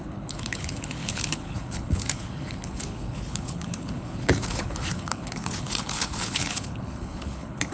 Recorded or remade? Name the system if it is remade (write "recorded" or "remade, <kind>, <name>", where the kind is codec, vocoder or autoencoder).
remade, codec, HILCodec